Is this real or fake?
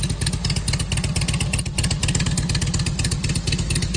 real